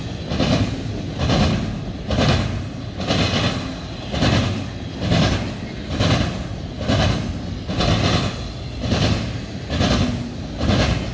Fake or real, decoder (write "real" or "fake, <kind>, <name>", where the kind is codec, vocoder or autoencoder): real